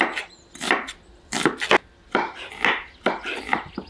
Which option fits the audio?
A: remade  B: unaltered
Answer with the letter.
B